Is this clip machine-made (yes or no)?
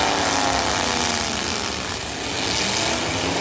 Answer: no